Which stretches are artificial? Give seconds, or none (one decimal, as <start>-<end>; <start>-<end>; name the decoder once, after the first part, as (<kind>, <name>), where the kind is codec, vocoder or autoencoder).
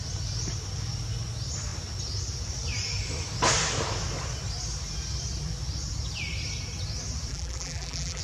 7.3-8.2 (vocoder, BigVGAN v2)